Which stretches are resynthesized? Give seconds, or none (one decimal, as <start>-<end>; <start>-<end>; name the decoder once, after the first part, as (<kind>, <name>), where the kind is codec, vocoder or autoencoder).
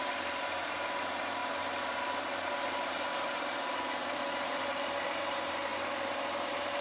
0.0-6.8 (vocoder, BigVGAN v2)